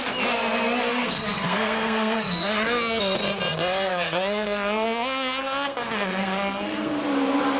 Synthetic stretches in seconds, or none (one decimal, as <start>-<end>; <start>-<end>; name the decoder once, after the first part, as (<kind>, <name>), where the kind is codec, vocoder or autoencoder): 0.9-3.0 (codec, SNAC); 3.9-7.0